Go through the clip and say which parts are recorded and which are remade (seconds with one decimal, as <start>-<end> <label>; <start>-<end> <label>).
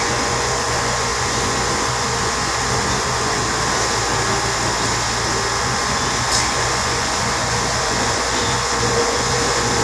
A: 0.0-3.4 remade; 3.4-5.6 recorded; 5.6-9.8 remade